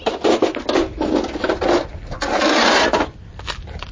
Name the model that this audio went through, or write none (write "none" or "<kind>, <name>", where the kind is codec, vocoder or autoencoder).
none